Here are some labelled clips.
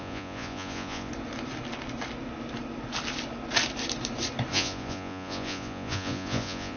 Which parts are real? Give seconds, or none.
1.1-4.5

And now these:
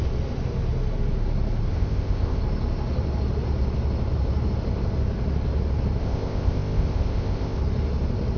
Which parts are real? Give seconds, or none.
0.0-1.7; 2.4-6.0; 7.6-8.4

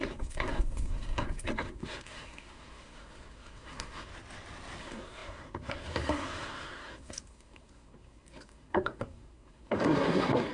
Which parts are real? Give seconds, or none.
4.1-4.8

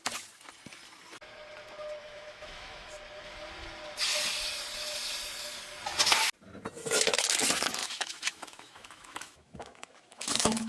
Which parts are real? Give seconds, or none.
0.0-2.0; 2.9-7.8

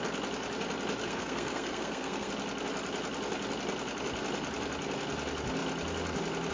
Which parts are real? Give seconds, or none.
0.0-1.0; 2.3-6.5